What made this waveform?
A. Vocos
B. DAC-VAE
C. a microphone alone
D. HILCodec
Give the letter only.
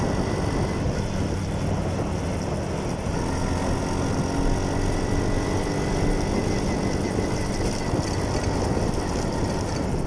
C